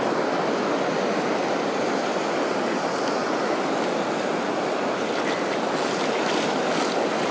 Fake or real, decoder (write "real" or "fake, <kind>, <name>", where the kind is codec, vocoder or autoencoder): real